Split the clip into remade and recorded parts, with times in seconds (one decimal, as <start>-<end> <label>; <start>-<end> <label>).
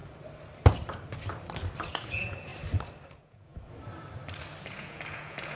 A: 0.0-1.9 recorded; 1.9-2.5 remade; 2.5-3.1 recorded; 3.1-3.5 remade; 3.5-4.6 recorded; 4.6-5.6 remade